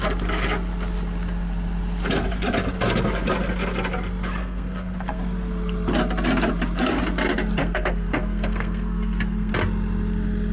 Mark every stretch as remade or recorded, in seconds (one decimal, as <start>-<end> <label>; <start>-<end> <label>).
0.0-4.4 recorded; 4.4-5.2 remade; 5.2-7.6 recorded; 7.6-9.5 remade; 9.5-10.5 recorded